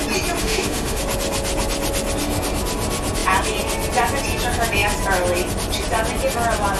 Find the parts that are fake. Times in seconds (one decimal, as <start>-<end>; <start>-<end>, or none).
0.4-1.0